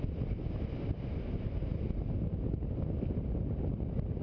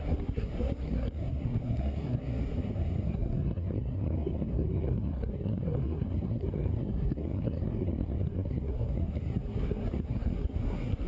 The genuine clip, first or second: first